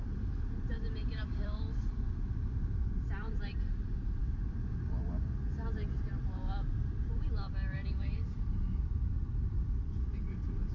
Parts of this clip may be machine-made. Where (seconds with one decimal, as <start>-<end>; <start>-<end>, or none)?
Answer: 0.0-10.7